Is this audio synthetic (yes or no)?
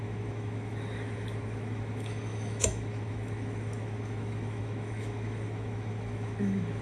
yes